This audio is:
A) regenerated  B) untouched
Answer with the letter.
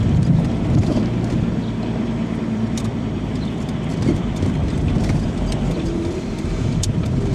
A